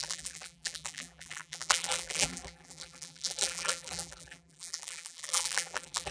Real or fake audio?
fake